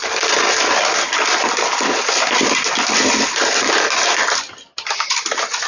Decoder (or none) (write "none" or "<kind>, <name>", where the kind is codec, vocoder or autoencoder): vocoder, BigVGAN v2